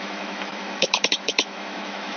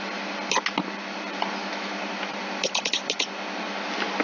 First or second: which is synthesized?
first